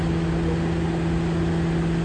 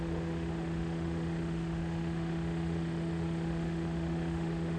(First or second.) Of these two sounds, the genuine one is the first